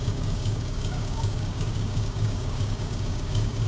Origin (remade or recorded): remade